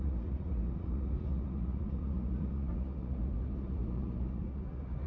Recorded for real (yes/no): no